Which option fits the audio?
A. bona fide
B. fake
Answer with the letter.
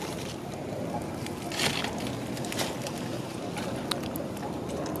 A